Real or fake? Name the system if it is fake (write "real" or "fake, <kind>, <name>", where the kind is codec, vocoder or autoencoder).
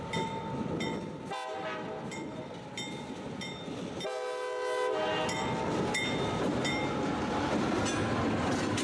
real